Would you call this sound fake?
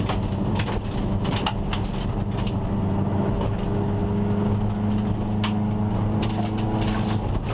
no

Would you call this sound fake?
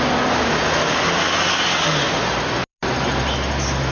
no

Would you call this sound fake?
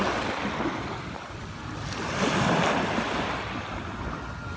no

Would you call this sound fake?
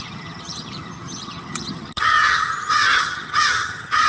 yes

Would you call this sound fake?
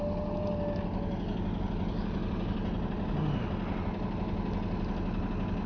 no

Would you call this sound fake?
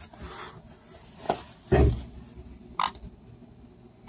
no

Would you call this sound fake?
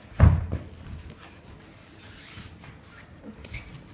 no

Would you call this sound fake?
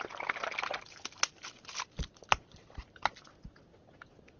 no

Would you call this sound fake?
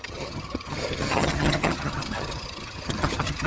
yes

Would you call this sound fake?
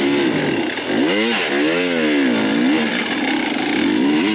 no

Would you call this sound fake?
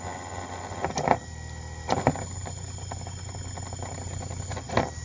no